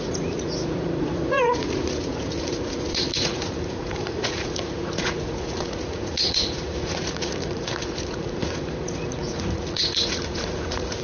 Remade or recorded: remade